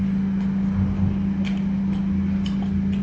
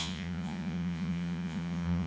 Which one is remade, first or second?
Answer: second